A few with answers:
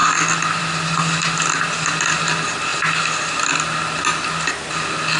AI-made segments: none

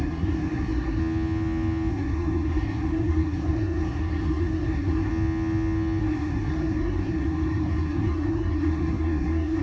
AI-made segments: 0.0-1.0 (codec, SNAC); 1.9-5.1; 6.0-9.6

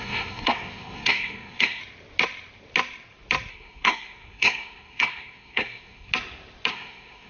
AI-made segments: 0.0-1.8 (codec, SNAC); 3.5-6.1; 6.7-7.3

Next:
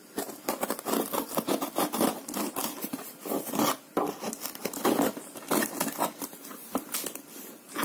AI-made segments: none

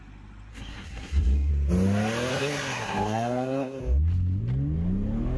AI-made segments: 0.5-1.5 (codec, SNAC); 2.3-3.8

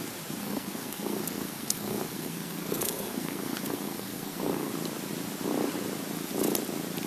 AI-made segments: 0.4-4.7 (codec, SNAC)